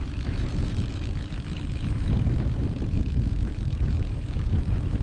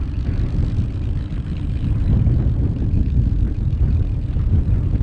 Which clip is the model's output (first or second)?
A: first